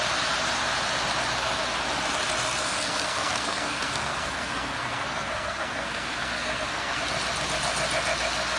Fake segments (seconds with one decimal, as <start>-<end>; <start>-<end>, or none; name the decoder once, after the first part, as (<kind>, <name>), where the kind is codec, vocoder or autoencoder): 2.6-7.0 (codec, SNAC)